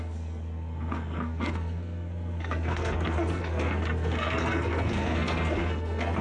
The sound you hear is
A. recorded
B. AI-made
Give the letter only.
B